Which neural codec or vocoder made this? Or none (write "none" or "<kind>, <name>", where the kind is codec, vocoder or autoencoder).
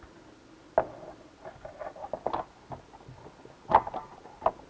none